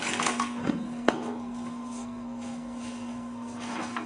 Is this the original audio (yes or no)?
no